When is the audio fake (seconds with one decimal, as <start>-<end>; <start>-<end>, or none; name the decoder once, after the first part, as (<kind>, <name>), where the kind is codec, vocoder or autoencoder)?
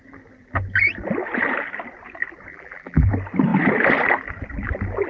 2.5-3.1 (vocoder, BigVGAN v2)